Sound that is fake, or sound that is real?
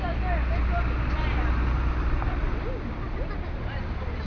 real